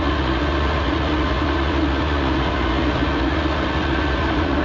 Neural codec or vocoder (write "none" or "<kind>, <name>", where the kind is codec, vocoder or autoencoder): vocoder, Vocos